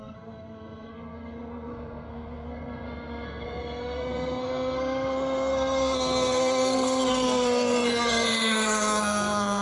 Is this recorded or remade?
remade